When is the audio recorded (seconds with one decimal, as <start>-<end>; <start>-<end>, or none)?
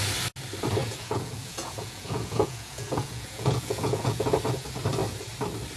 0.0-0.8; 4.3-5.8